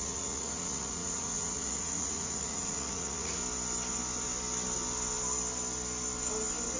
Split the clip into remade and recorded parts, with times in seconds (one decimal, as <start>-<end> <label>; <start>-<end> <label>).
0.0-3.4 remade; 3.4-6.8 recorded